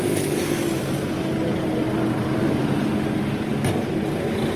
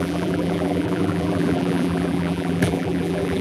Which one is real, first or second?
first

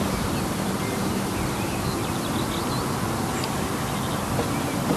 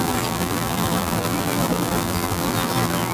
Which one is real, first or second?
first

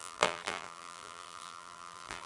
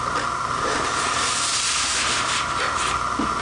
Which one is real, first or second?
second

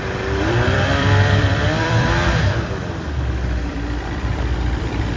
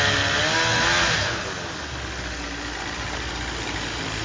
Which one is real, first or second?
second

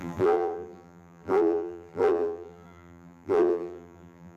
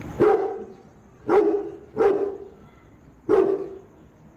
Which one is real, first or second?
second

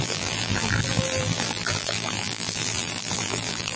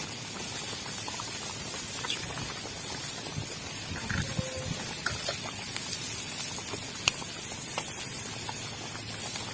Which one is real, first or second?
second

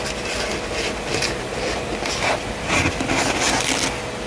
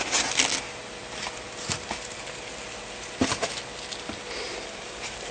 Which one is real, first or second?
second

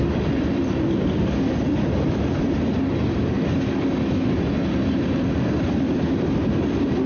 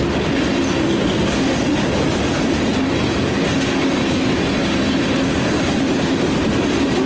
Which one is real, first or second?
second